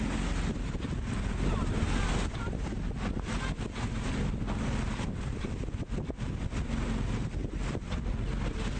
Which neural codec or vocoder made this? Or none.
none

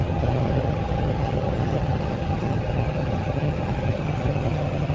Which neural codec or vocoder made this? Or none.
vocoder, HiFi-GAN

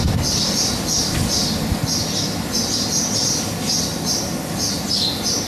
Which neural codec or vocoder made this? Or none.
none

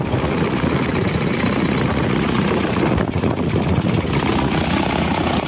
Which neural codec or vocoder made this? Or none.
vocoder, Vocos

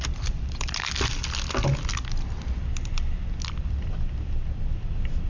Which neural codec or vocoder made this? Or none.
none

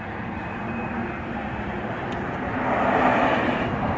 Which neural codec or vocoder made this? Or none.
none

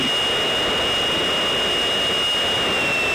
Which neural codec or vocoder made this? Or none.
none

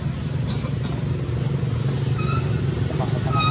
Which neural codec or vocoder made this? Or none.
none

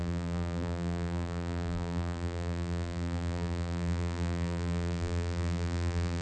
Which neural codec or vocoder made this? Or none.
vocoder, BigVGAN v2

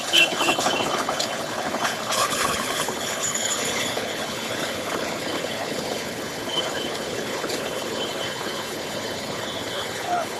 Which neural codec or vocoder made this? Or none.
codec, HILCodec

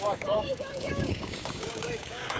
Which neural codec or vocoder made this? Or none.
codec, DAC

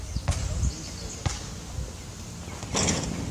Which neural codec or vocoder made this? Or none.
none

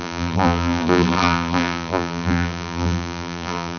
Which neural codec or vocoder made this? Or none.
vocoder, BigVGAN v2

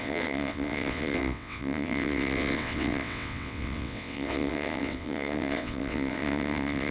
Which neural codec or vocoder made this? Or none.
vocoder, WaveNeXt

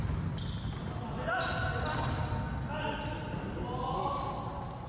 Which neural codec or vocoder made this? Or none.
none